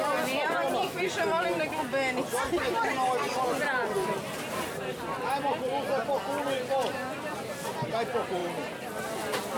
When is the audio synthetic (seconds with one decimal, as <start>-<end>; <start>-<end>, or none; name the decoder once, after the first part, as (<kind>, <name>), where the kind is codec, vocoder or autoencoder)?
none